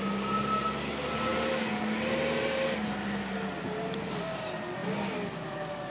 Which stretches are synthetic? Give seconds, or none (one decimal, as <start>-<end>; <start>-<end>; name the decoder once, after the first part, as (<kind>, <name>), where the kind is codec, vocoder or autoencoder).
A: none